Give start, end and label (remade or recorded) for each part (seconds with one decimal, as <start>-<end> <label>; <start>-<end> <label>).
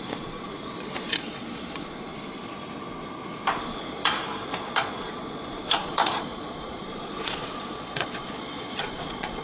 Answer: 0.0-2.1 remade; 2.1-3.6 recorded; 3.6-9.4 remade